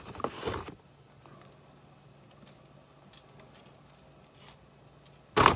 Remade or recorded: recorded